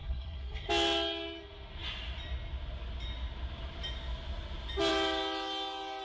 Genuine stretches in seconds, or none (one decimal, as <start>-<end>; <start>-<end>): 0.7-6.0

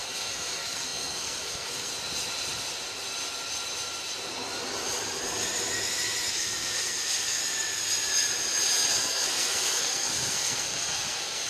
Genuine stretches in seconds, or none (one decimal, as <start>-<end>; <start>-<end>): 1.9-6.3; 7.4-8.9

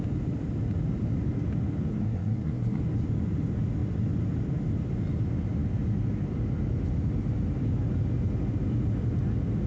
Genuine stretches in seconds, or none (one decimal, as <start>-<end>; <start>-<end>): 0.0-1.9; 2.8-9.7

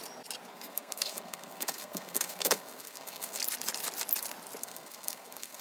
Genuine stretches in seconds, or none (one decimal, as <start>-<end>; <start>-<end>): 0.0-0.5; 3.4-4.6

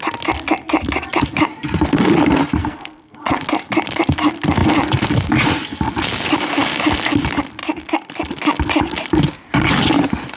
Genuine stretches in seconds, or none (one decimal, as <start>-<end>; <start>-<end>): 0.0-2.6; 3.2-10.4

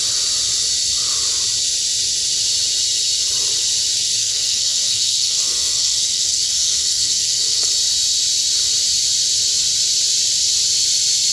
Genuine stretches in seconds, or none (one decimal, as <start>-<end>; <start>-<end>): 0.0-4.2; 7.7-11.3

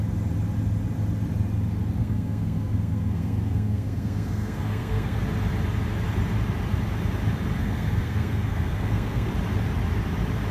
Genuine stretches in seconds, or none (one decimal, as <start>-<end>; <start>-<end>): 0.0-2.0; 5.2-7.6; 9.3-10.5